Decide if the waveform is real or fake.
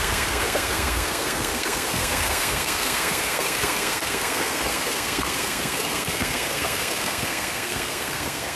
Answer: fake